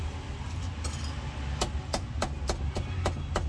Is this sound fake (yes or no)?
no